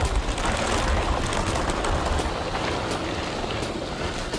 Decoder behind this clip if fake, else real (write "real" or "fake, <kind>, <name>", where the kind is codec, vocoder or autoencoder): real